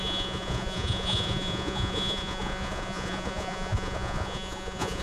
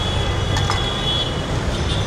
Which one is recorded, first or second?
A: second